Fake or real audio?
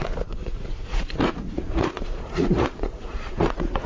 fake